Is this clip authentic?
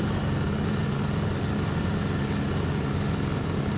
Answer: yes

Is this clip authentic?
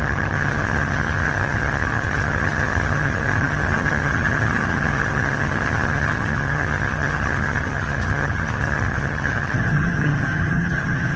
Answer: no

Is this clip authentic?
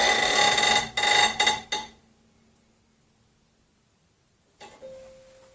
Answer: yes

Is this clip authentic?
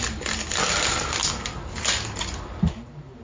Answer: yes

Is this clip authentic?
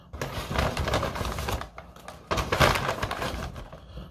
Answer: yes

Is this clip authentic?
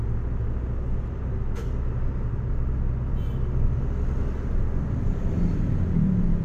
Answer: yes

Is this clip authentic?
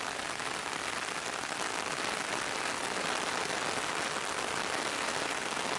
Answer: yes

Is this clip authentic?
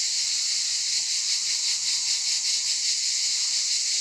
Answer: yes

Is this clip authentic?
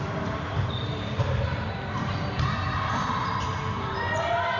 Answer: no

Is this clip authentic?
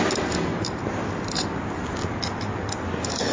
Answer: yes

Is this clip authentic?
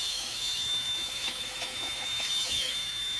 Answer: no